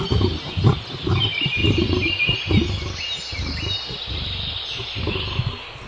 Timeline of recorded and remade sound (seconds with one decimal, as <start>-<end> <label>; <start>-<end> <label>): 0.0-5.9 recorded